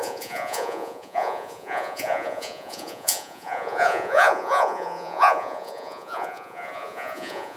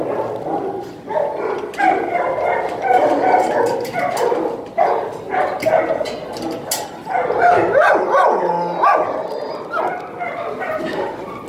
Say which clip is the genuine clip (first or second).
second